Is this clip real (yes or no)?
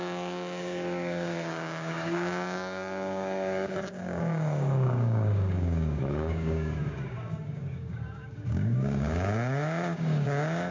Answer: no